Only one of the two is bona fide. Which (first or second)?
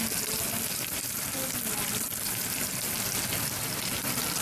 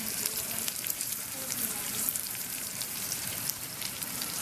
first